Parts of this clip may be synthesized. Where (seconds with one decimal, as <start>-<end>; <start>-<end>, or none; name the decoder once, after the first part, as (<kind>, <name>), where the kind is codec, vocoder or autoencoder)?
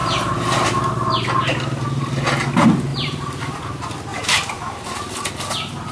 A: 2.9-3.6 (vocoder, BigVGAN v2); 4.1-5.3